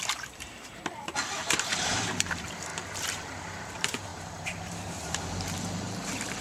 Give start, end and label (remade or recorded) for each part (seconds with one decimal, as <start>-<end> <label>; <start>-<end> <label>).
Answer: 0.0-6.4 remade

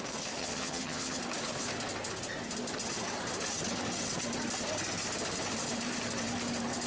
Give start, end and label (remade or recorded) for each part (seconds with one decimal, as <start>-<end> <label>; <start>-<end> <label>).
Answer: 0.0-0.4 recorded; 0.4-1.2 remade; 1.2-6.9 recorded

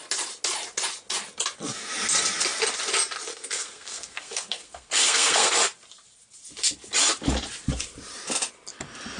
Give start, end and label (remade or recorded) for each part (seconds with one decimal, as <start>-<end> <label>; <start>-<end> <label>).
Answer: 0.0-3.3 recorded; 3.3-5.5 remade; 5.5-9.2 recorded

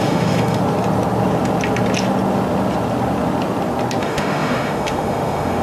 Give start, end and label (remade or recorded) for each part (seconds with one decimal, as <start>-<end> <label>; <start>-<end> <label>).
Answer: 0.0-0.6 remade; 0.6-4.0 recorded; 4.0-5.6 remade

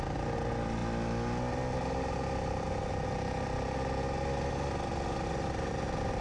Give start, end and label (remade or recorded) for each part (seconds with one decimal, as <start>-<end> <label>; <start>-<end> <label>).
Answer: 0.0-6.2 recorded

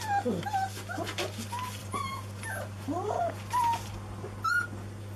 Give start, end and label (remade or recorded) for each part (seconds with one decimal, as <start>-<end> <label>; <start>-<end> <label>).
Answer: 0.0-1.8 recorded; 1.8-3.2 remade; 3.2-5.2 recorded

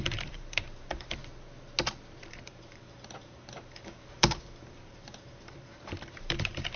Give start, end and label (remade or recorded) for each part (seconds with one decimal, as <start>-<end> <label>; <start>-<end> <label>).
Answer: 0.0-1.2 remade; 1.2-2.3 recorded; 2.3-6.8 remade